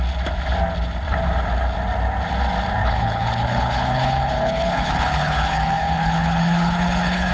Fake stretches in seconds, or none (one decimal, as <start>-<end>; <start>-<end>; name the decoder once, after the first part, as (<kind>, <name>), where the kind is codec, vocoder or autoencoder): 2.8-7.3 (codec, HILCodec)